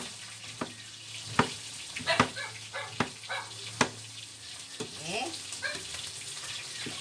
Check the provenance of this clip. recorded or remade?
recorded